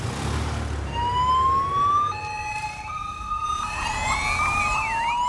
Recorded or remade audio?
recorded